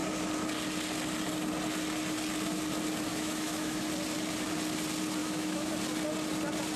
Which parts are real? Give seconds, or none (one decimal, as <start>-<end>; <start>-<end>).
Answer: 0.0-3.1; 3.8-5.2; 5.7-6.8